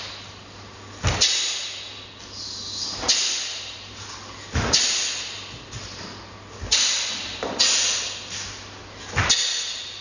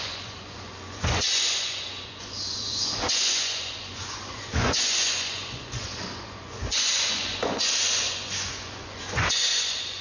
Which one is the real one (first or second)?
first